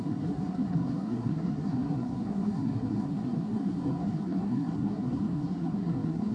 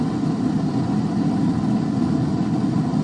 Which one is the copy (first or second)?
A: first